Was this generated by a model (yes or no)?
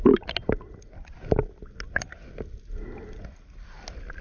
no